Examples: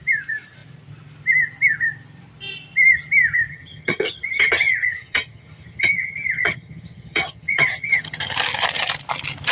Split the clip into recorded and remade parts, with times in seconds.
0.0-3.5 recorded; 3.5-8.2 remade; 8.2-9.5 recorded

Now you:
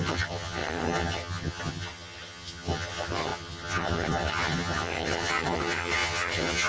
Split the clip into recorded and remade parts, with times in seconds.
0.0-6.7 remade

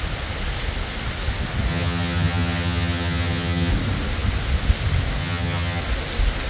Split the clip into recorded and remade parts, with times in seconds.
0.0-1.7 recorded; 1.7-3.7 remade; 3.7-5.2 recorded; 5.2-5.8 remade; 5.8-6.5 recorded

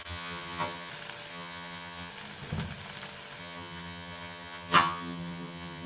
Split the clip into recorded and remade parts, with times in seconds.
0.0-0.9 remade; 0.9-1.3 recorded; 1.3-2.1 remade; 2.1-3.4 recorded; 3.4-5.9 remade

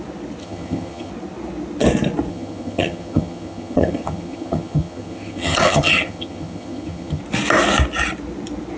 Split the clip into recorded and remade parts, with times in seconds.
0.0-0.4 recorded; 0.4-1.1 remade; 1.1-2.3 recorded; 2.3-7.2 remade; 7.2-8.8 recorded

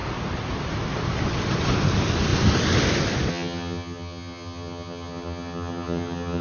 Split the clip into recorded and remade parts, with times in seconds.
0.0-3.3 recorded; 3.3-6.4 remade